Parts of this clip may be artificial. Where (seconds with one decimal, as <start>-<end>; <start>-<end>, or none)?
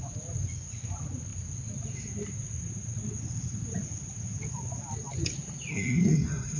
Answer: 5.7-6.6